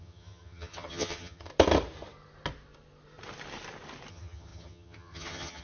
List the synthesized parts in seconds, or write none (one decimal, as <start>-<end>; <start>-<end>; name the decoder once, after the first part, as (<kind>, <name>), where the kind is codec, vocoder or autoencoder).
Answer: 0.0-1.5 (vocoder, HiFi-GAN); 4.1-5.6

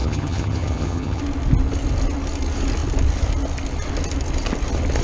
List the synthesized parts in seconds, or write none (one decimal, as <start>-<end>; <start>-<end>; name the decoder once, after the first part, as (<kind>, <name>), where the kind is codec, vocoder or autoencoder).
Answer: 0.0-1.2 (vocoder, HiFi-GAN)

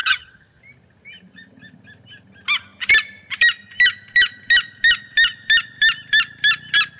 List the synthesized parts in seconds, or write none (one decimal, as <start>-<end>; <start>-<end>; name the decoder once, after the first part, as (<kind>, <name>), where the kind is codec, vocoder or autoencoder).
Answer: 0.0-0.6 (vocoder, HiFi-GAN)

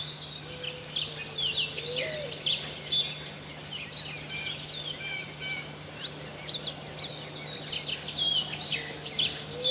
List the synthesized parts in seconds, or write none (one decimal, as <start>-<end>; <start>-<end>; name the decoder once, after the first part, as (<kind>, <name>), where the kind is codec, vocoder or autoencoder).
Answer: none

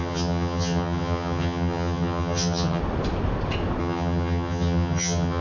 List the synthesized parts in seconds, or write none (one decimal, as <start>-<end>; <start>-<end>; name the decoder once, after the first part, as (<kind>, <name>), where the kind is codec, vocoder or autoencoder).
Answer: 0.0-2.8 (vocoder, HiFi-GAN); 3.8-5.4

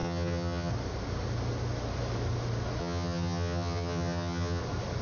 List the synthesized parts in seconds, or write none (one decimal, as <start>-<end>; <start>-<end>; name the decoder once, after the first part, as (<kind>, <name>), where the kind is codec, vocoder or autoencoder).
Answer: 0.0-0.7 (vocoder, HiFi-GAN); 2.8-4.6

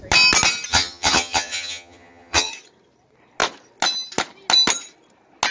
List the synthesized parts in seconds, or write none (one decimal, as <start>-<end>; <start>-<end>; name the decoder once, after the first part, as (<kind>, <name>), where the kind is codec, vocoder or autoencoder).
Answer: 0.7-2.5 (vocoder, HiFi-GAN)